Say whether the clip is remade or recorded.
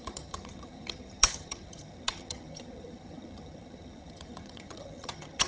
remade